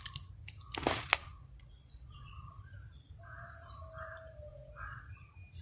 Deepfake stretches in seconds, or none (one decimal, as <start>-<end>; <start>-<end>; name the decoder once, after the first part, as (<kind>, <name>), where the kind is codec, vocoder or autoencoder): 1.2-2.3 (vocoder, Vocos); 4.5-5.1